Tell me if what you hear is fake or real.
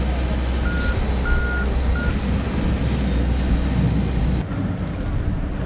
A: real